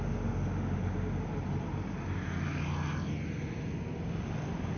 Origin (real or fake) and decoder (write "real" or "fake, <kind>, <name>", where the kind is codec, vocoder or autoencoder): real